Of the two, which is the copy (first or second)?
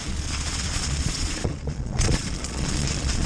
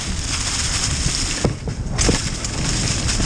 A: first